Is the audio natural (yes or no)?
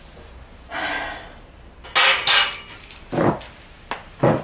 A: yes